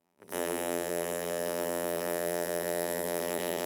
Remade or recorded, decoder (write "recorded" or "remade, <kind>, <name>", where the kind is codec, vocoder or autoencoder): remade, vocoder, BigVGAN v2